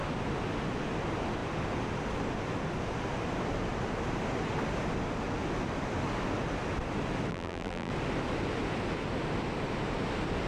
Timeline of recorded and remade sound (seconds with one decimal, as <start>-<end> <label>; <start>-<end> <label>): 0.0-7.3 recorded; 7.3-7.9 remade; 7.9-10.5 recorded